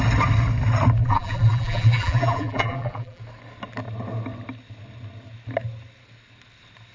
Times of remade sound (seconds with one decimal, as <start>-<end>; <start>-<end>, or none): 1.0-3.2